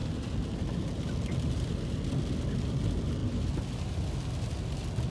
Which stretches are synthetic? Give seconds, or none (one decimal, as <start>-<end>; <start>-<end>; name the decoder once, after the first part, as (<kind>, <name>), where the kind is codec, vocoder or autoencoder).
none